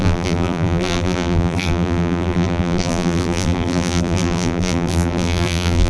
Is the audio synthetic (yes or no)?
yes